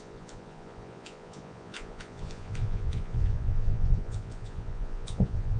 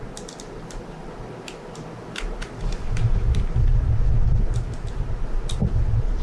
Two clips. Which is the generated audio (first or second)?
first